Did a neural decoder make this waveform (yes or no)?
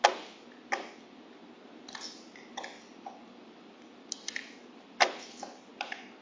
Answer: no